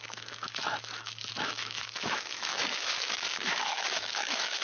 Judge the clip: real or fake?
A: fake